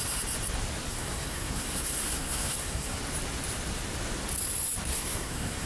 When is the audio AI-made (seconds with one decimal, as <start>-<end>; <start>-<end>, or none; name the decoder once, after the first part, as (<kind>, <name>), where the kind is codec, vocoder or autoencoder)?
0.9-3.0 (codec, SNAC); 4.9-5.7